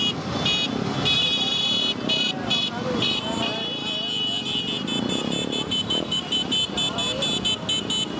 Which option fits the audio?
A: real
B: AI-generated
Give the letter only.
A